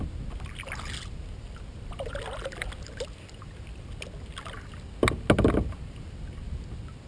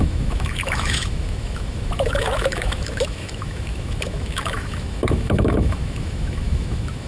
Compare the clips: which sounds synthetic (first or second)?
second